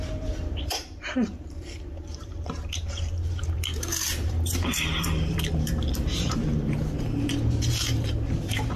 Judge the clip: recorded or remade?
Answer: remade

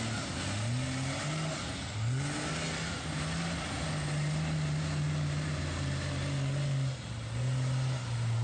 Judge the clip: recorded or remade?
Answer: recorded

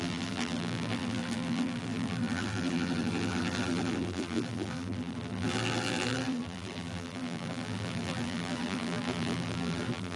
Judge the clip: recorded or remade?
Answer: remade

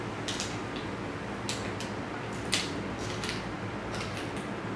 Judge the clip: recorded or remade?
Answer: recorded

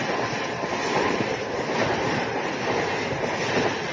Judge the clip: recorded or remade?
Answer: recorded